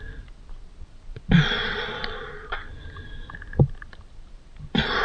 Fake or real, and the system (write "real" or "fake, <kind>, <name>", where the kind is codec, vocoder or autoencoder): real